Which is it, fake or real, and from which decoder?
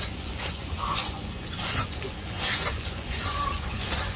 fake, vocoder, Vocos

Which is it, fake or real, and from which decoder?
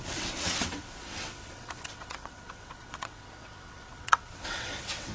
fake, vocoder, WaveNeXt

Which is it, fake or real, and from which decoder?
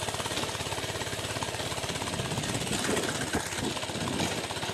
real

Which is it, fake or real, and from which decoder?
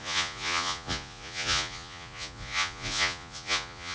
fake, vocoder, Vocos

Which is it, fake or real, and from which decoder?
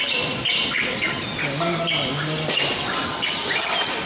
real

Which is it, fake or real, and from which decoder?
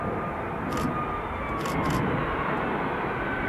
real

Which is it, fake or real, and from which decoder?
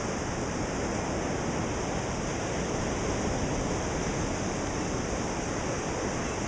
real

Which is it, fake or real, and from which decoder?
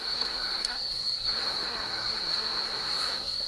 fake, codec, SNAC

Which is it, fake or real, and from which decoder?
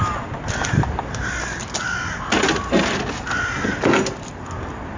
real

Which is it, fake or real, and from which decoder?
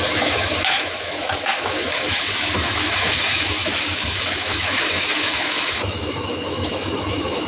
fake, autoencoder, DAC-VAE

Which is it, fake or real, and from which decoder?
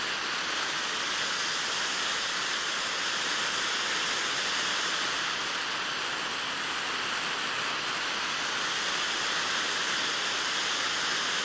real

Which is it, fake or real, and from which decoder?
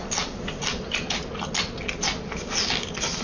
real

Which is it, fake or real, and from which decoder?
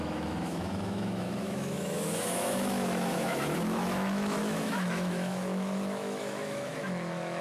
fake, autoencoder, DAC-VAE